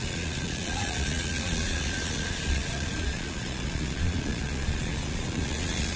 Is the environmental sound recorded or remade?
remade